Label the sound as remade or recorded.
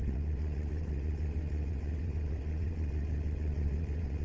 remade